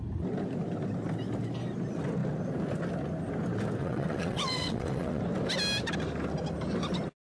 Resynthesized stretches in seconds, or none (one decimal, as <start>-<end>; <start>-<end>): 3.8-5.2